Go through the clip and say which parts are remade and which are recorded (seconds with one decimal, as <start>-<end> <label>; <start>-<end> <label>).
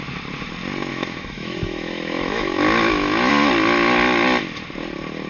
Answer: 0.0-0.9 recorded; 0.9-3.3 remade; 3.3-5.3 recorded